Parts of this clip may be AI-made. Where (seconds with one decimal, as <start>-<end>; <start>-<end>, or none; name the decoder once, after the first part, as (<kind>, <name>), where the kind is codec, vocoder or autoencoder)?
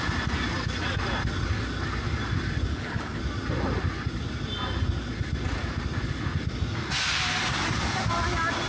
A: 2.7-3.2 (codec, HILCodec)